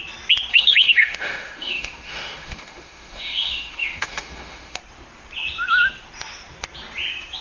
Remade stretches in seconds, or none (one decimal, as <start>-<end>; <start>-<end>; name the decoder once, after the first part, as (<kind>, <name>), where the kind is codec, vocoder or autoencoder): 0.5-4.8 (autoencoder, DAC-VAE)

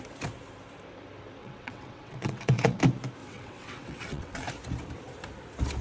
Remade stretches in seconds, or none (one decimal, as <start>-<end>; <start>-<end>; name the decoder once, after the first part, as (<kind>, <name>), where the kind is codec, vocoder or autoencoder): 1.4-2.8 (vocoder, WaveNeXt); 3.2-4.5

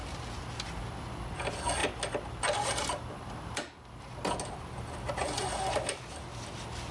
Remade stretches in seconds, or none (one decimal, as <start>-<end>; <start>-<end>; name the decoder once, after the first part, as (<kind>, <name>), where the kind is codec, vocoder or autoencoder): none

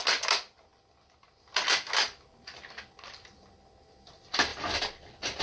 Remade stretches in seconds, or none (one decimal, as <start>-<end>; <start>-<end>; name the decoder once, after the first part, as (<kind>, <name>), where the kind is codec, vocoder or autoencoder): none

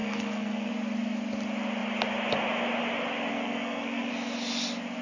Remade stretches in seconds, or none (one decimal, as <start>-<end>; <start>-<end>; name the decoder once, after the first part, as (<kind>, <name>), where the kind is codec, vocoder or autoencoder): 0.0-0.7 (codec, SNAC); 3.3-4.1

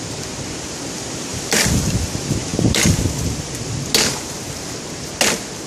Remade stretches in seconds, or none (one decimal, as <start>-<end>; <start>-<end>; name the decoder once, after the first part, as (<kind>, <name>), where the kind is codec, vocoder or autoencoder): 1.3-1.9 (vocoder, BigVGAN v2); 2.5-3.0

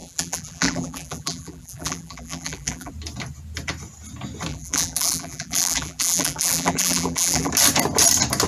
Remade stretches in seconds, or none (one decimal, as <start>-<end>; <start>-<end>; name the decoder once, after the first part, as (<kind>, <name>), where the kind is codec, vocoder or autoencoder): 0.0-2.9 (vocoder, BigVGAN v2); 4.5-7.5

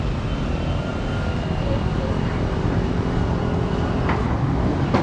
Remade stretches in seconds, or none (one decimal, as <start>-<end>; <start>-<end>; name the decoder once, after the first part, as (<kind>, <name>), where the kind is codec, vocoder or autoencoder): none